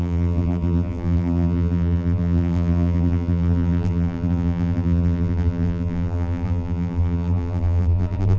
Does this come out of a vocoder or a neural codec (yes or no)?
yes